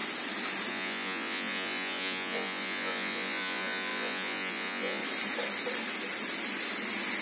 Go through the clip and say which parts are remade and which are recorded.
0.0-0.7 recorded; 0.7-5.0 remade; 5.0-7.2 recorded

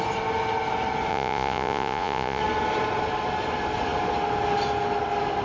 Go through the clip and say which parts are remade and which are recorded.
0.0-1.1 recorded; 1.1-2.4 remade; 2.4-5.4 recorded

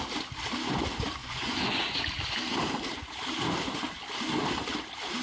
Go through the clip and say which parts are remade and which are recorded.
0.0-1.2 recorded; 1.2-2.0 remade; 2.0-5.2 recorded

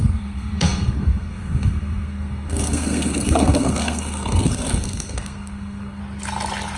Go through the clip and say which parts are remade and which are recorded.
0.0-6.0 remade; 6.0-6.8 recorded